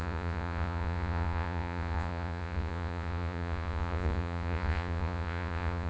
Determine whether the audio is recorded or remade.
remade